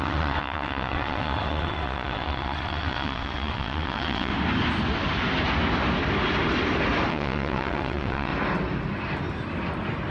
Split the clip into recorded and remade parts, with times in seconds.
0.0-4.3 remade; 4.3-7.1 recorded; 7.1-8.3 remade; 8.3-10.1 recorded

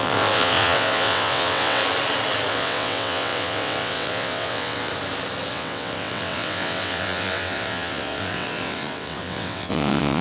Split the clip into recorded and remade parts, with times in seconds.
0.0-1.8 remade; 1.8-2.5 recorded; 2.5-4.9 remade; 4.9-5.5 recorded; 5.5-10.2 remade

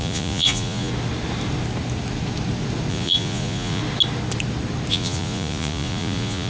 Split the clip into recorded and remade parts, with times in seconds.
0.0-0.9 remade; 0.9-2.9 recorded; 2.9-3.8 remade; 3.8-4.9 recorded; 4.9-6.5 remade

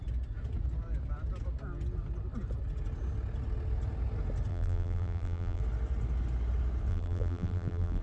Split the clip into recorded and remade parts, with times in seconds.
0.0-4.5 recorded; 4.5-5.6 remade; 5.6-6.9 recorded; 6.9-8.0 remade

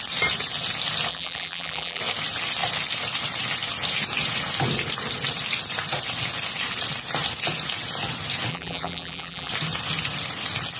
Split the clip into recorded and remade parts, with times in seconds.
0.0-1.1 recorded; 1.1-2.0 remade; 2.0-8.5 recorded; 8.5-9.5 remade; 9.5-10.8 recorded

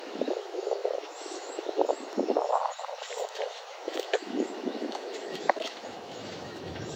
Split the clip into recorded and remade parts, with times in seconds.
0.0-7.0 remade